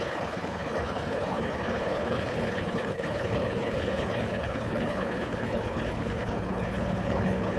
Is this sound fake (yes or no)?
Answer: yes